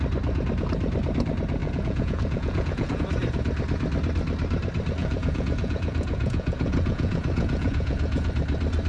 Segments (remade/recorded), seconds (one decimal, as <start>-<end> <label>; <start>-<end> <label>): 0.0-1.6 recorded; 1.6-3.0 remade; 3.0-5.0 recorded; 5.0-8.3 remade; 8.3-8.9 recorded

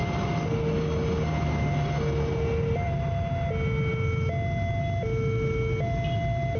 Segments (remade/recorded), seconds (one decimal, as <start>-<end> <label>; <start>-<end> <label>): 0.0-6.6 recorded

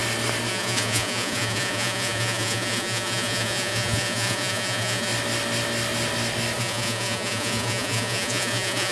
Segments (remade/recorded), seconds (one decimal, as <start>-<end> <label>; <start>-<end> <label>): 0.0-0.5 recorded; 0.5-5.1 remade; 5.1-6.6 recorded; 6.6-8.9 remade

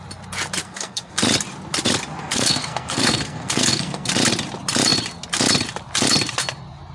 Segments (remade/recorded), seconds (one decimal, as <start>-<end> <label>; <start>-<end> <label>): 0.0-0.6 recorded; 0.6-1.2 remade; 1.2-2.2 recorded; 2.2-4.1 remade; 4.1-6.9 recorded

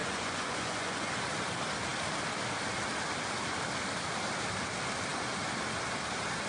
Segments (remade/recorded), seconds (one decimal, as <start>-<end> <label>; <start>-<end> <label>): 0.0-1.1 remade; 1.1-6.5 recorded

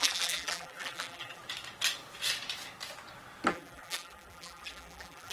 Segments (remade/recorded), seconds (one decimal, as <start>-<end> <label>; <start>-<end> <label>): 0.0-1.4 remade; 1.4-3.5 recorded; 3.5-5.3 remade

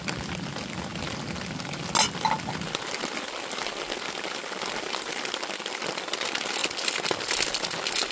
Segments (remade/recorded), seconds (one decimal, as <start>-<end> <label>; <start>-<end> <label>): 0.0-8.1 recorded